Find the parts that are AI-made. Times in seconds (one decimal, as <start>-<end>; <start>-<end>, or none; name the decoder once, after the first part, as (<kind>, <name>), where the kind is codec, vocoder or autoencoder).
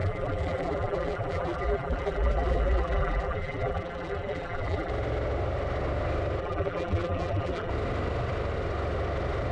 0.0-4.9 (vocoder, BigVGAN v2); 6.4-7.7